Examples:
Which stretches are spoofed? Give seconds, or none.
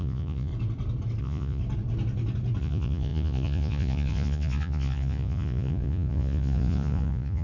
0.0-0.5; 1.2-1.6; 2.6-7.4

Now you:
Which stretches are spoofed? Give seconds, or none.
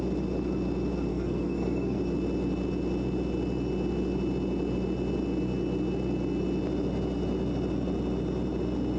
1.1-2.0